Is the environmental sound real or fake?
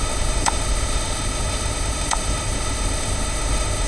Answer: fake